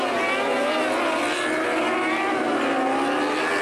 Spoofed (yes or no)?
no